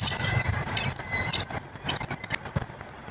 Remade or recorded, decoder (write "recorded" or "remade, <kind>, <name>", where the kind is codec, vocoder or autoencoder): recorded